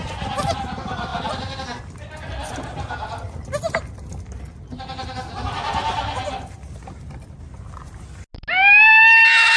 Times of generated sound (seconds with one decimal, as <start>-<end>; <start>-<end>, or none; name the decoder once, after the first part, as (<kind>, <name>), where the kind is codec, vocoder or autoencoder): none